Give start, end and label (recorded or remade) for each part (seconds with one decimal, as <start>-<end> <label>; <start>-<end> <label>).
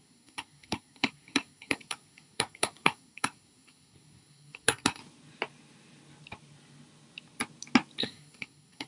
0.0-5.0 remade; 5.0-8.0 recorded; 8.0-8.9 remade